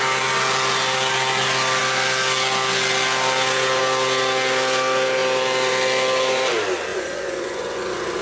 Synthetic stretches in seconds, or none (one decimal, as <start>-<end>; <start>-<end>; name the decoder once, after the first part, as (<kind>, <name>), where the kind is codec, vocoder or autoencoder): 6.9-8.2 (vocoder, Vocos)